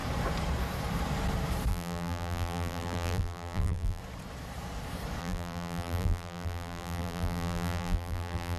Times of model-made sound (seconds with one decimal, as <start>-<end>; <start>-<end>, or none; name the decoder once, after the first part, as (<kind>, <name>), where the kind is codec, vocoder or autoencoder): 1.7-4.0 (vocoder, BigVGAN v2); 5.2-8.6